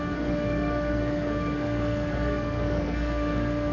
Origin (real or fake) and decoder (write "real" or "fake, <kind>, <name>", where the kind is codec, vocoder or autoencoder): fake, codec, SNAC